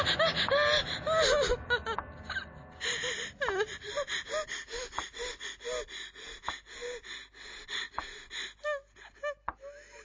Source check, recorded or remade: recorded